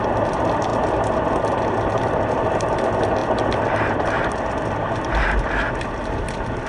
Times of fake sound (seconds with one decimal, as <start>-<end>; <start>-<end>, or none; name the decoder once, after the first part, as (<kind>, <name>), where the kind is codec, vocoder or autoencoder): none